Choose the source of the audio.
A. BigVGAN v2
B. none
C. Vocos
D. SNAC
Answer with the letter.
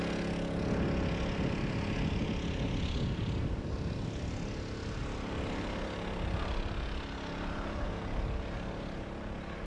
B